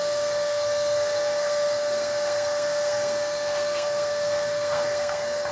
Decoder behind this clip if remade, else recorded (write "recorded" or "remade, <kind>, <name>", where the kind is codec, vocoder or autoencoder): remade, codec, SNAC